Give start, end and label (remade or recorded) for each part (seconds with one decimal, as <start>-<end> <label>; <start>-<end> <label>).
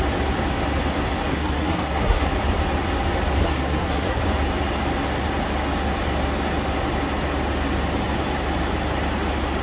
0.0-1.3 recorded; 1.3-2.3 remade; 2.3-3.4 recorded; 3.4-4.2 remade; 4.2-9.6 recorded